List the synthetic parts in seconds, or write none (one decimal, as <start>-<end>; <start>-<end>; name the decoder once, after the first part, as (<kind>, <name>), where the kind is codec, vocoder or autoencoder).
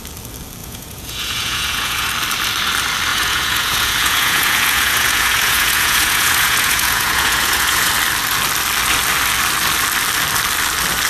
0.6-2.1 (vocoder, Vocos); 3.1-7.9